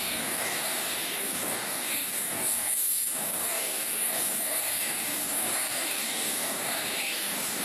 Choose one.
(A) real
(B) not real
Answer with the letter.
B